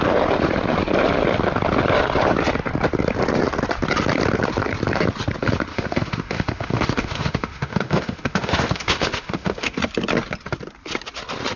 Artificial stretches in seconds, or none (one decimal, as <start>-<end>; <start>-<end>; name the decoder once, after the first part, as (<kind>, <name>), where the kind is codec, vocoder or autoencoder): 5.7-9.8 (autoencoder, DAC-VAE)